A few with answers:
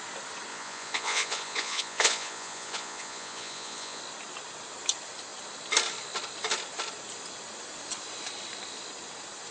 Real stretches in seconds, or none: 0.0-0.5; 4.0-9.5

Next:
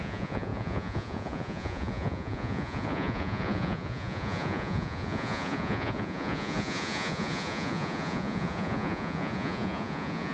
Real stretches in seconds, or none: none

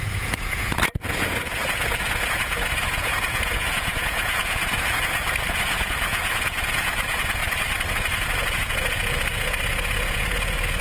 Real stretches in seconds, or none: 7.4-7.9

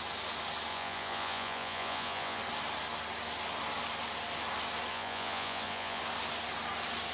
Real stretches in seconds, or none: 0.0-0.7; 2.4-4.9; 6.0-7.1

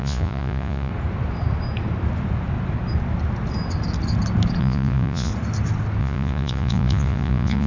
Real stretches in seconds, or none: 0.9-4.6; 5.3-6.0